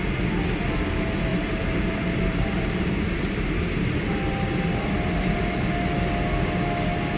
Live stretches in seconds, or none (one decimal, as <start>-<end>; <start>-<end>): 0.0-1.3; 5.6-7.2